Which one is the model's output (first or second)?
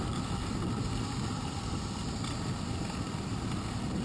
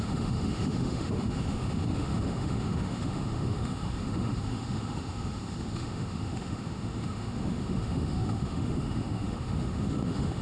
second